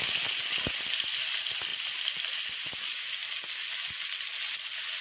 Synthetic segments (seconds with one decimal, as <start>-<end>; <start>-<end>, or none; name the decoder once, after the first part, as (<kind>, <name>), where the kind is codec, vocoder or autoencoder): none